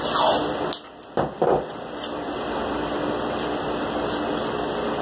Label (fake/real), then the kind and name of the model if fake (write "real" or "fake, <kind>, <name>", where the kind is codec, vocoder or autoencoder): real